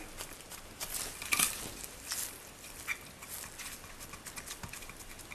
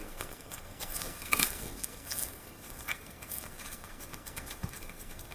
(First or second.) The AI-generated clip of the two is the second